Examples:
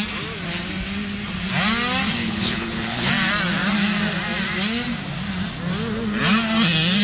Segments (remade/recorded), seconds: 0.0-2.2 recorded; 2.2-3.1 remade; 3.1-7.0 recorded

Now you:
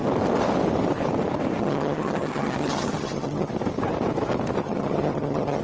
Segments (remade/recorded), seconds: 0.0-1.6 recorded; 1.6-3.5 remade; 3.5-4.6 recorded; 4.6-5.6 remade

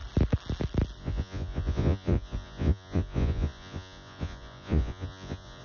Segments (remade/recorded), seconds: 0.0-1.0 recorded; 1.0-5.6 remade